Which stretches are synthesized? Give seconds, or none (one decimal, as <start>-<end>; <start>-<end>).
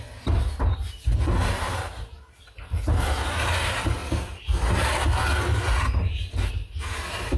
none